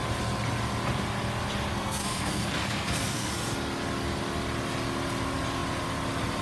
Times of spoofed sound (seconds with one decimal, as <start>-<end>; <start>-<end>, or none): 1.7-3.3